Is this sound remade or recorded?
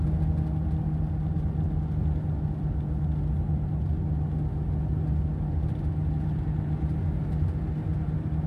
recorded